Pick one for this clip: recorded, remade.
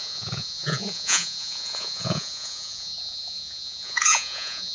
remade